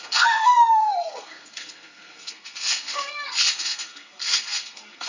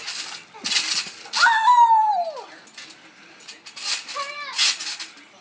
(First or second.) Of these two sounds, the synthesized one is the first